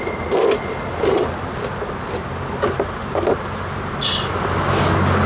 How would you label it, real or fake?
real